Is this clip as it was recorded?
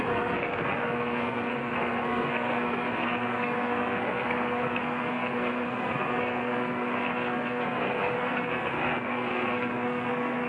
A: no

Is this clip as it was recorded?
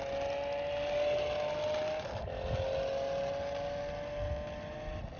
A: yes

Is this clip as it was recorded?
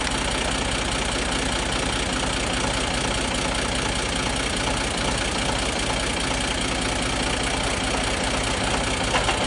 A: yes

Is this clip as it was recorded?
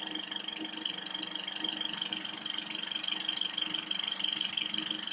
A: yes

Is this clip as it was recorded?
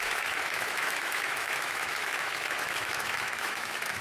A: no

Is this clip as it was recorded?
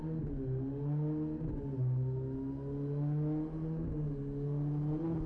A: yes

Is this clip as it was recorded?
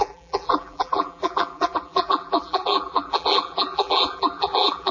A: no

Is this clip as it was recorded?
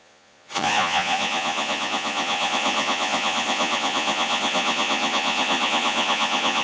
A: no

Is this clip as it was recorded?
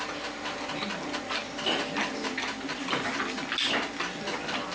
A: yes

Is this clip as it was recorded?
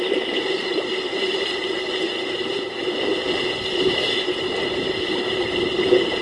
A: no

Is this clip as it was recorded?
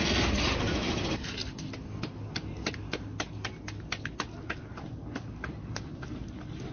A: yes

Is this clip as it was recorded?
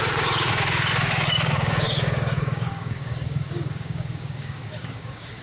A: no